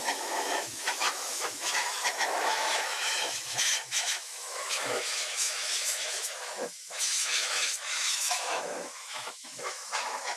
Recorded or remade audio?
remade